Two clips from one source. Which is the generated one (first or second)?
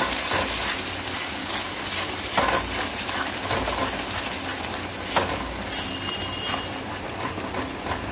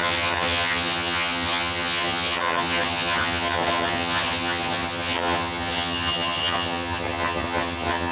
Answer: second